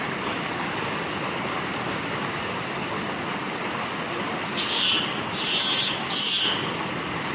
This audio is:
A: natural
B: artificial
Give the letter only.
A